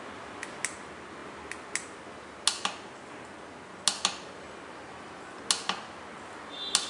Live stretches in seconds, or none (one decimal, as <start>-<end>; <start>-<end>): 0.0-6.9